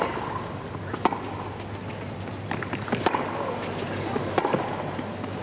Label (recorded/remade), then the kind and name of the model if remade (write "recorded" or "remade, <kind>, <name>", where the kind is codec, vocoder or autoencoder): recorded